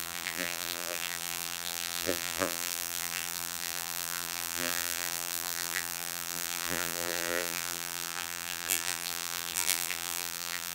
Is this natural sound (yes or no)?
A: no